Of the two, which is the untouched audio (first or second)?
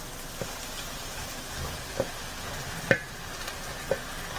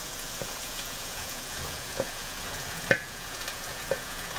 first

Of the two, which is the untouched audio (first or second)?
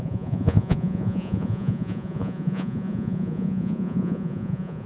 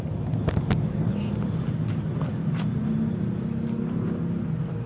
second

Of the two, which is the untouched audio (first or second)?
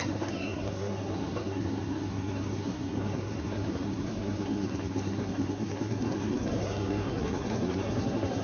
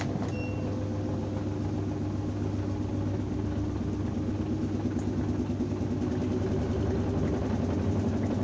second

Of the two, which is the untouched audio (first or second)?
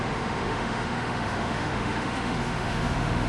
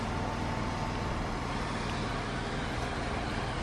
second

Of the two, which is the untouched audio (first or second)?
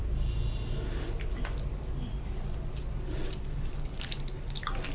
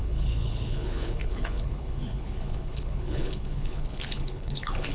first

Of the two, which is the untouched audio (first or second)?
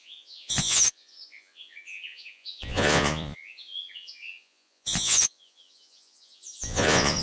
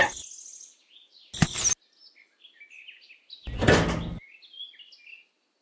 second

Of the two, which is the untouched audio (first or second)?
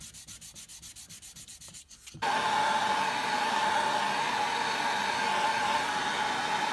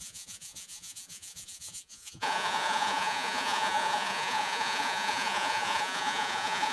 first